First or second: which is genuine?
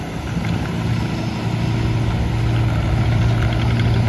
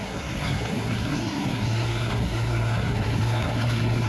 first